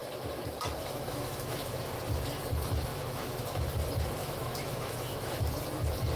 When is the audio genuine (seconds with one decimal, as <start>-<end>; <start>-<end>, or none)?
1.8-2.9; 3.7-4.2; 5.4-6.2